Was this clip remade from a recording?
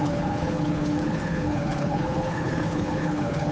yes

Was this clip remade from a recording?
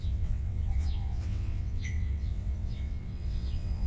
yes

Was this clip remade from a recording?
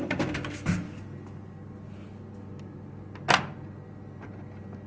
no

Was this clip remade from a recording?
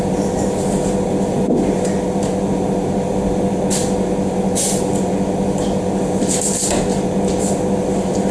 no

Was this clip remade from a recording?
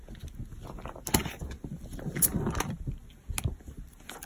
no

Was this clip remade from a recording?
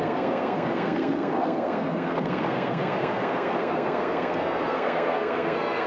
yes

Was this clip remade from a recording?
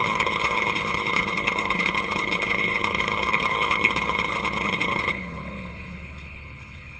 yes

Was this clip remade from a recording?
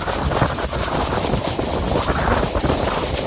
no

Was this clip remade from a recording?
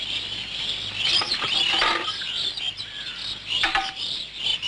no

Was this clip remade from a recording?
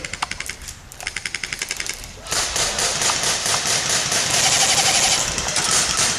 no